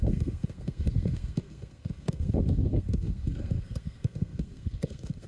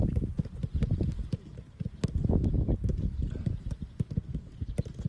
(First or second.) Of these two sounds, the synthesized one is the first